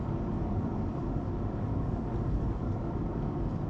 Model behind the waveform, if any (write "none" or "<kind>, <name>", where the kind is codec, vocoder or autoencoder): codec, DAC